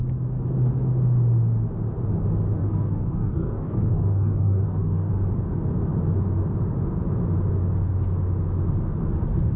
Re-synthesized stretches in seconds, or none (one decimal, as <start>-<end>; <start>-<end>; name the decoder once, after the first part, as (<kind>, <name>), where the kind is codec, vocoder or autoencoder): 2.6-5.1 (codec, DAC)